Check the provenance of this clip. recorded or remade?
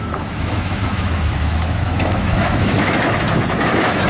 remade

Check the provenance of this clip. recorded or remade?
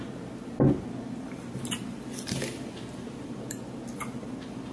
recorded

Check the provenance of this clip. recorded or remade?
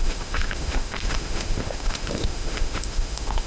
remade